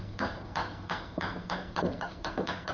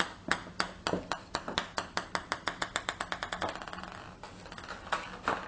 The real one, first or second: second